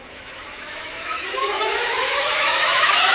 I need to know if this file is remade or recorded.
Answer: remade